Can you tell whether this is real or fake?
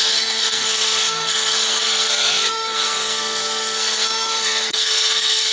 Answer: fake